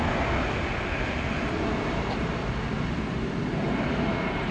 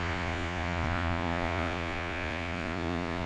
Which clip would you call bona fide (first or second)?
first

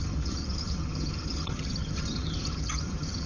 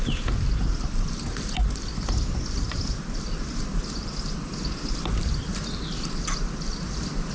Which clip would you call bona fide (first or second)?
second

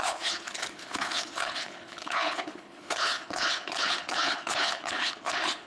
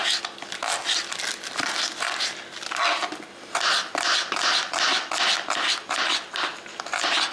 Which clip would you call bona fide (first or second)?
second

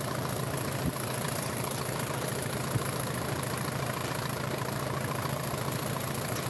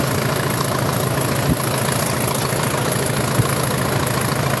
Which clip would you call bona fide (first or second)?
second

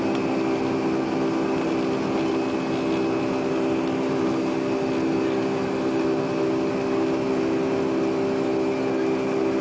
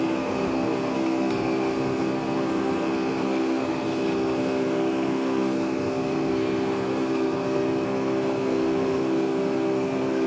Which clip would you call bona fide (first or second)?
first